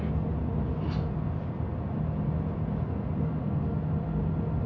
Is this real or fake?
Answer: real